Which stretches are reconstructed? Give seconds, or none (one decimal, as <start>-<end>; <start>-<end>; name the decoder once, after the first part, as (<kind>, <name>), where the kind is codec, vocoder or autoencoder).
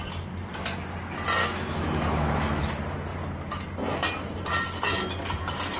1.4-2.7 (autoencoder, DAC-VAE)